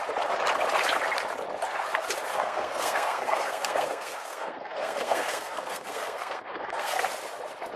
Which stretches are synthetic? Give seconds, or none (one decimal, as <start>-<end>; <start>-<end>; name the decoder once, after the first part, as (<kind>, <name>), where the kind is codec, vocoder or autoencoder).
2.3-7.0 (codec, SNAC)